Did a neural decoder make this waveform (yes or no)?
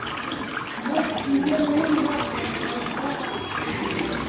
no